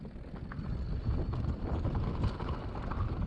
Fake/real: real